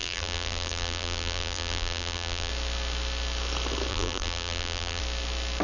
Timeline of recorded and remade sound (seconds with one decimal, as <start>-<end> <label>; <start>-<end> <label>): 0.0-2.5 remade; 2.5-3.9 recorded; 3.9-5.0 remade; 5.0-5.6 recorded